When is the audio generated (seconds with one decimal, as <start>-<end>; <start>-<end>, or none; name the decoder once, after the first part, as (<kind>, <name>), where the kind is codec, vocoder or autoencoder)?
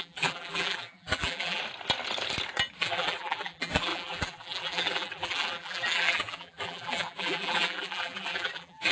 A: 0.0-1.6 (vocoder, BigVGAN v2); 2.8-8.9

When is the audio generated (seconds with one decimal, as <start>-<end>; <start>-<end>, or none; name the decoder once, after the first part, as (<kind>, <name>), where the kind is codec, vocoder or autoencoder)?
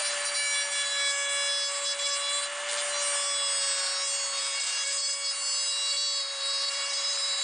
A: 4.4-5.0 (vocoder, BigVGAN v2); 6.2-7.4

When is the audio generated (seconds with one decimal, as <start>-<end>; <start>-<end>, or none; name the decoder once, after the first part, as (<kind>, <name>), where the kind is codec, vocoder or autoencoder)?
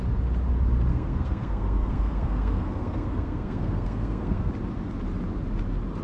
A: 0.9-4.5 (codec, SNAC)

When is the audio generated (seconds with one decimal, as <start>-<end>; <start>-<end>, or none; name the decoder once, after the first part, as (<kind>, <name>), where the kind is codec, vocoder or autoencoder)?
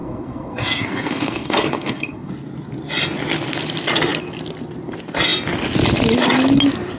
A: 0.0-2.3 (codec, SNAC)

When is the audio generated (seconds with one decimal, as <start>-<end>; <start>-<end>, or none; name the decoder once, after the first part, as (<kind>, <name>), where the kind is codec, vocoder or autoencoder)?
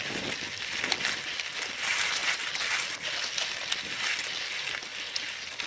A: none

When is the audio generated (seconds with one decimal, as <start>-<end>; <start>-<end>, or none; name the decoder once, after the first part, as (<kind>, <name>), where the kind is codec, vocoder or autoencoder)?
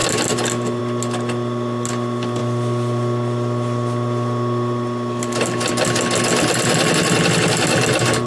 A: none